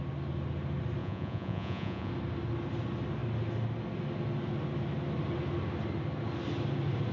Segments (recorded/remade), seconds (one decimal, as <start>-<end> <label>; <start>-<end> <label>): 0.0-1.0 recorded; 1.0-2.1 remade; 2.1-7.1 recorded